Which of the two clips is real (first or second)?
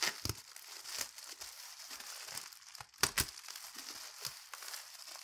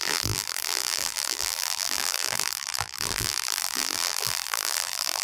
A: first